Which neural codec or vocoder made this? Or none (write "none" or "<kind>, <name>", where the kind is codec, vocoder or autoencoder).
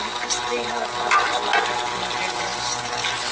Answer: none